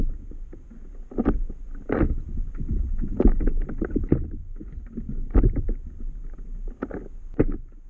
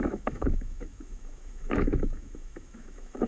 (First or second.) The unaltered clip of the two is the first